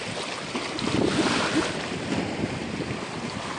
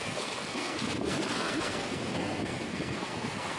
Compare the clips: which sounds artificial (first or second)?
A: second